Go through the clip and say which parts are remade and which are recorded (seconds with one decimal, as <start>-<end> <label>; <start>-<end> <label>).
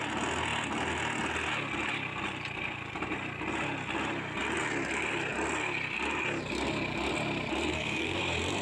0.0-7.7 recorded; 7.7-8.2 remade; 8.2-8.6 recorded